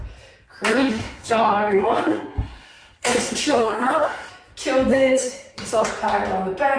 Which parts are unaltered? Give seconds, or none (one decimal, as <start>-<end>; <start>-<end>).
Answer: 0.0-0.7; 4.3-4.9; 5.9-6.8